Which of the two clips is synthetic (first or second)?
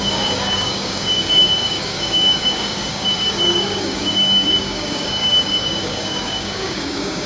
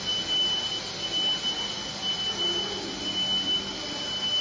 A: first